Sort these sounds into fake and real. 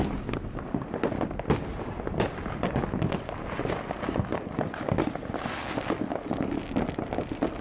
real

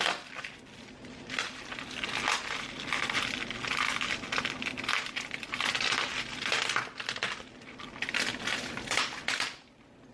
real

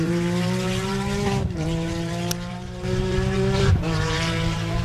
fake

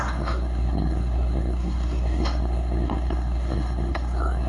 fake